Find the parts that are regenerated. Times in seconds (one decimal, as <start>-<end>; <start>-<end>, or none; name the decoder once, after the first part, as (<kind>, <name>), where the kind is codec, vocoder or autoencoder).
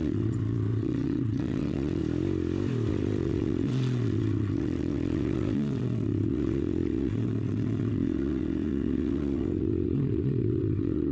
0.0-2.0 (vocoder, WaveNeXt); 2.9-11.1